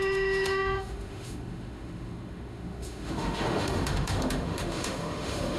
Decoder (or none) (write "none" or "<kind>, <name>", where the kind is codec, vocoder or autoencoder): autoencoder, DAC-VAE